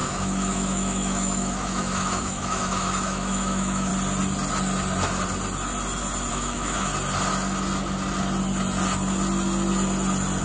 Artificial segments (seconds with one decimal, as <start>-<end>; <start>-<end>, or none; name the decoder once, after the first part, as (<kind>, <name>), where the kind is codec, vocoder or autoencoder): 0.0-3.9 (autoencoder, DAC-VAE); 6.3-6.9